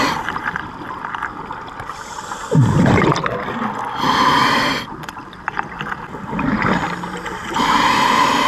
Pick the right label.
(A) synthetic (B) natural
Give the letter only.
B